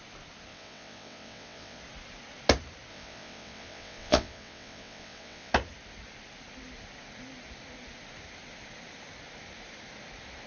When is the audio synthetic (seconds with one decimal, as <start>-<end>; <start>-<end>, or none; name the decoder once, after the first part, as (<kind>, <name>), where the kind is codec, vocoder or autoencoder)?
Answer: 0.5-1.8 (vocoder, WaveNeXt); 2.9-5.5